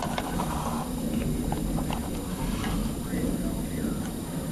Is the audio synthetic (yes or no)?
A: no